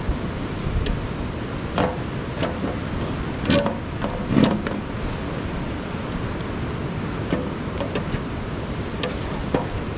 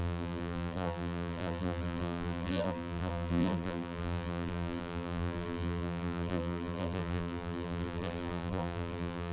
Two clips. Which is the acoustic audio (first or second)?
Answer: first